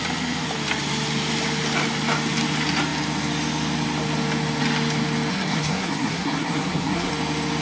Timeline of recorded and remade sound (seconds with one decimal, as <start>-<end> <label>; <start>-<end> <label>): 0.0-5.3 recorded; 5.3-7.1 remade; 7.1-7.6 recorded